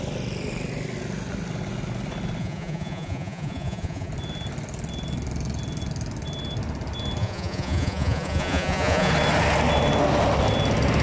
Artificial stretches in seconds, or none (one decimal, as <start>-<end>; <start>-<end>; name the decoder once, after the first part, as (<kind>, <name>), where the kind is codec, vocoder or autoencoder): 2.4-4.1 (vocoder, Vocos); 7.2-9.1